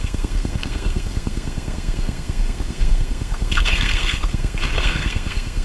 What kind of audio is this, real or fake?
fake